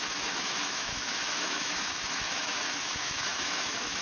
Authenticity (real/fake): fake